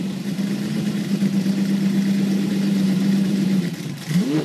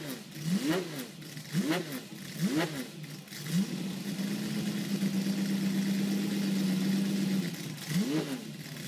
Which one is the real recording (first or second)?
second